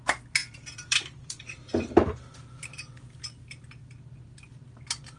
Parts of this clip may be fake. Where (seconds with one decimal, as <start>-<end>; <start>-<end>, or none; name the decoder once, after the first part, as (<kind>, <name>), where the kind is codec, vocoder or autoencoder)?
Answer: 0.4-1.9 (vocoder, BigVGAN v2)